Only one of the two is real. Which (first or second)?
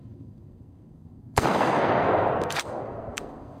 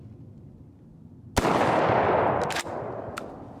second